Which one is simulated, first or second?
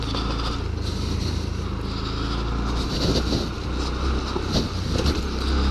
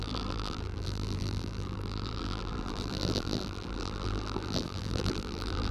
second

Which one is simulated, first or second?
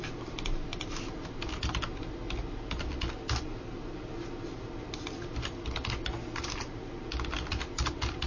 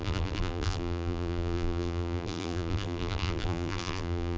second